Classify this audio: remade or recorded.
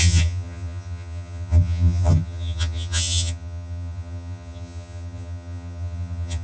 remade